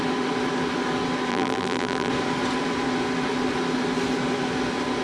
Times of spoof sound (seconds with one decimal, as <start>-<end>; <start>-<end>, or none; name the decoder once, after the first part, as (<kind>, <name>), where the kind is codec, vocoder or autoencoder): 1.3-2.1 (vocoder, BigVGAN v2)